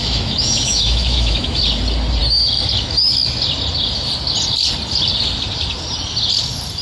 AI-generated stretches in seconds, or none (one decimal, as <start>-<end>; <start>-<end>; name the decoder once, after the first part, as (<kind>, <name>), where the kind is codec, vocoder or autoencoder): 0.0-1.6 (autoencoder, DAC-VAE)